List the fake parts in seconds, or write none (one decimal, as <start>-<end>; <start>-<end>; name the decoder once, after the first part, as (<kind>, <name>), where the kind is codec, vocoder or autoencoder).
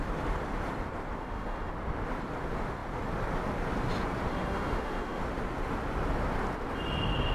1.2-1.7 (autoencoder, DAC-VAE); 4.3-5.2